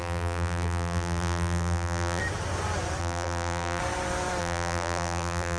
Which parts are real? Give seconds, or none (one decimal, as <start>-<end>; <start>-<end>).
2.2-3.0; 3.8-4.4

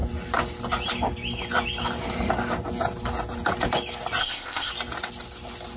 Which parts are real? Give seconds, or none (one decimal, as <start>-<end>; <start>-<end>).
0.0-4.2; 4.7-5.8

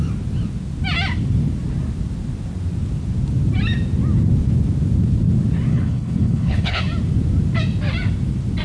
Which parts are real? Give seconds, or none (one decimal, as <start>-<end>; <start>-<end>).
0.0-5.7; 6.8-8.6

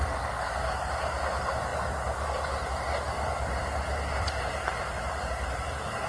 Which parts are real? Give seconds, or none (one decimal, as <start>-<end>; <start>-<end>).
0.0-6.1

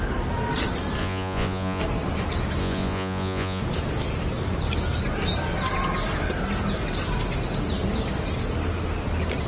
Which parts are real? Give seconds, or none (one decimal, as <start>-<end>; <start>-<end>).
0.0-1.0; 1.8-2.6; 3.6-9.5

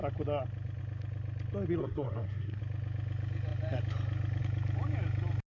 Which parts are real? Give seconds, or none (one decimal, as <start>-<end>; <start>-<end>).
0.0-1.8; 2.6-5.5